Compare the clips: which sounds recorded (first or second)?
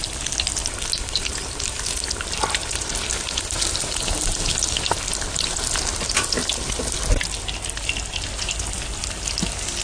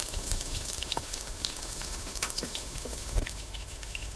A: first